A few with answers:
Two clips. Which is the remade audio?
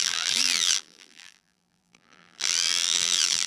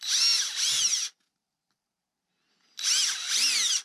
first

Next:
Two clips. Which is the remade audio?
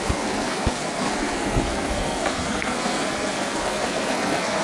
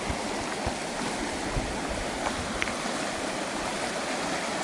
first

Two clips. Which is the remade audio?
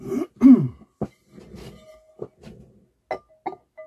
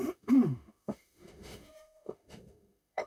second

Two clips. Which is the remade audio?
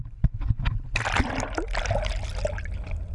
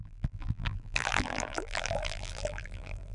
second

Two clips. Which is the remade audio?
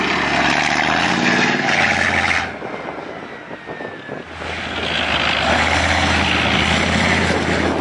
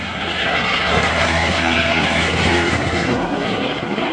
second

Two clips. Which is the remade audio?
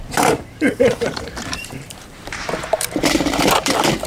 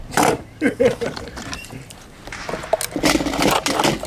first